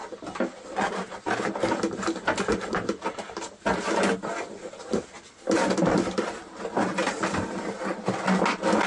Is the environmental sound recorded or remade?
recorded